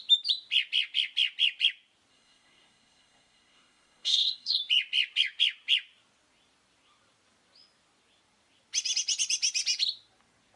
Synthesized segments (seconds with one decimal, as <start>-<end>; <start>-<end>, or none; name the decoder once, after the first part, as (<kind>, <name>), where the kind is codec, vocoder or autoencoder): 2.1-4.6 (codec, SNAC)